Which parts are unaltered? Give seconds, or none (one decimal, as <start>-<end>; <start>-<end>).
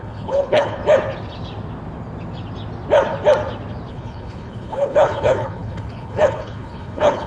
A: 0.8-3.9